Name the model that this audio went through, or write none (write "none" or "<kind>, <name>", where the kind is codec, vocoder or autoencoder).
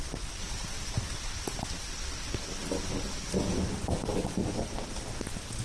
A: none